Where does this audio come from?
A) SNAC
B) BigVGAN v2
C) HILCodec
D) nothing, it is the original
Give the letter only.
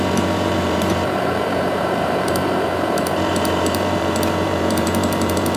B